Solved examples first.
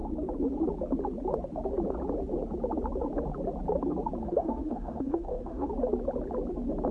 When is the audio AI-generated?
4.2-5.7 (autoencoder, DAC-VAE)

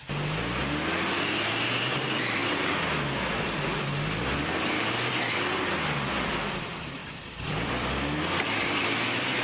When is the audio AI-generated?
2.4-5.5 (vocoder, BigVGAN v2); 7.0-8.2

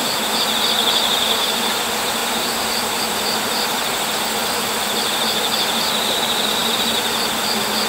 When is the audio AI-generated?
none

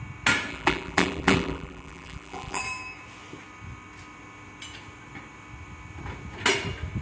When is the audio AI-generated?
0.5-2.6 (vocoder, BigVGAN v2)